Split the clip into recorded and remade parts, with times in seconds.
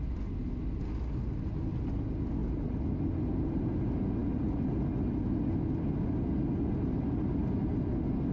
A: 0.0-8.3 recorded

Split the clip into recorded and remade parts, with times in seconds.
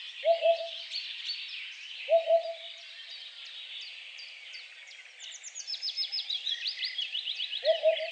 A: 0.0-1.8 recorded; 1.8-2.9 remade; 2.9-3.9 recorded; 3.9-8.1 remade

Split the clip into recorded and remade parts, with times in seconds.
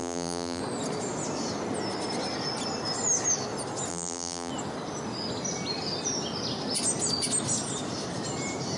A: 0.0-0.6 remade; 0.6-3.9 recorded; 3.9-4.5 remade; 4.5-8.8 recorded